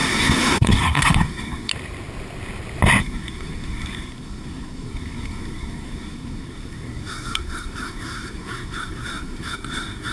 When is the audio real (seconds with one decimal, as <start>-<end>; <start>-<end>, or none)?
1.7-3.0